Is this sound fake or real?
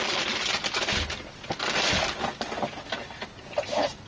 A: real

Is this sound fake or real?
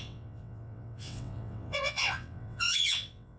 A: fake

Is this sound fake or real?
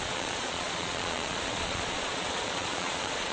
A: fake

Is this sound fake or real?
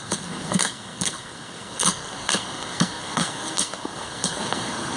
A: fake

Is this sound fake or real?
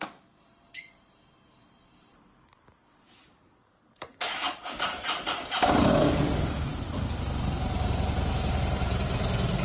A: fake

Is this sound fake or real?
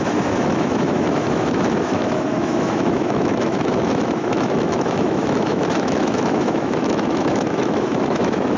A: fake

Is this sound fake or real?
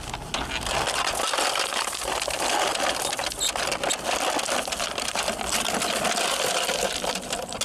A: real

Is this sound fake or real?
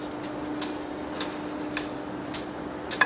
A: real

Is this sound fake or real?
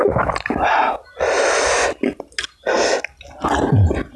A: real